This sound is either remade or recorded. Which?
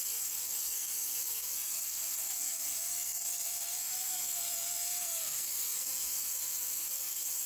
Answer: remade